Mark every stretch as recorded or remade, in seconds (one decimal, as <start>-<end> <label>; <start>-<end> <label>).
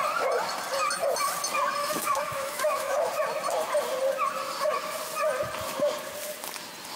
0.0-1.8 recorded; 1.8-3.1 remade; 3.1-7.0 recorded